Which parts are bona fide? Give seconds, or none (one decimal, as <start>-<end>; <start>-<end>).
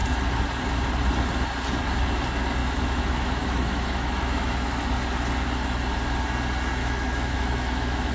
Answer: 0.0-2.6; 4.9-6.8